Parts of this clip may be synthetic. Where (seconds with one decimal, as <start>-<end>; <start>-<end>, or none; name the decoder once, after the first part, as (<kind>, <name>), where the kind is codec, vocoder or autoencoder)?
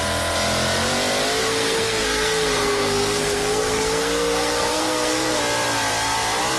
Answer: 1.4-5.4 (codec, SNAC)